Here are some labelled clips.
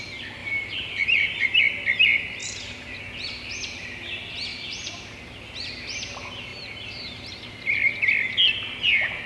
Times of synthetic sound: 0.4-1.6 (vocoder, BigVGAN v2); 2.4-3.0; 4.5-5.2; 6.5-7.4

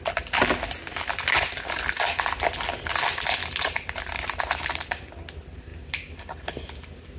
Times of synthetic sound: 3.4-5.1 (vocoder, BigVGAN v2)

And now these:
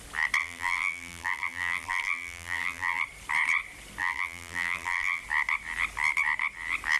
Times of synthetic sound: 0.4-3.0 (vocoder, BigVGAN v2); 4.0-5.2

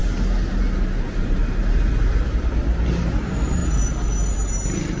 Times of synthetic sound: none